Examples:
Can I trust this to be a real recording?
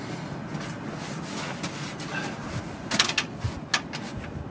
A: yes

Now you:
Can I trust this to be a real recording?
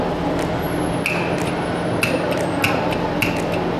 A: yes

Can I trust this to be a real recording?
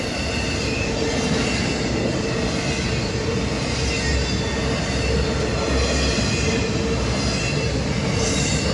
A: yes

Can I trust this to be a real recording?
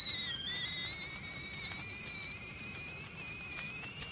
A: yes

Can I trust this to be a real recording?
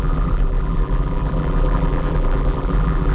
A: no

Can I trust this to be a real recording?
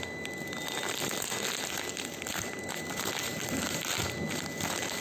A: yes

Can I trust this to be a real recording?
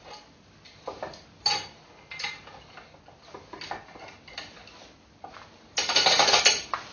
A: yes